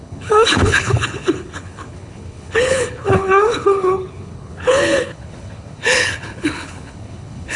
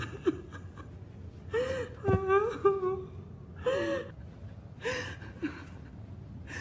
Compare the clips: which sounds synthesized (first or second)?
first